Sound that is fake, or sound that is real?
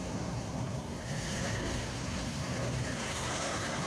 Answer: fake